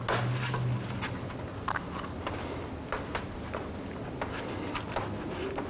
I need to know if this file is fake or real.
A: real